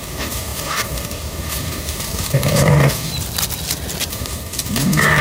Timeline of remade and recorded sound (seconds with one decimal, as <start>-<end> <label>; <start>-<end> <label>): 0.0-3.1 remade; 3.1-4.1 recorded; 4.1-5.2 remade